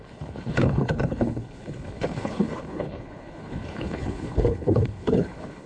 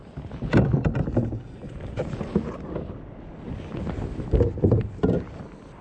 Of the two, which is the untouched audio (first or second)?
second